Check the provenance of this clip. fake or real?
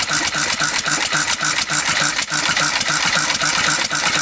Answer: real